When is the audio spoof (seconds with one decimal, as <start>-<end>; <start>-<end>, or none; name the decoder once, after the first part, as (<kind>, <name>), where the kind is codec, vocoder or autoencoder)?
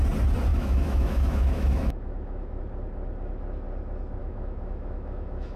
0.5-2.6 (autoencoder, DAC-VAE); 4.2-5.6